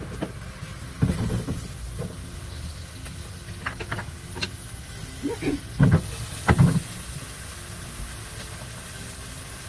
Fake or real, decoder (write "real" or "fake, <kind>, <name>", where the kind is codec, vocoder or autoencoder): real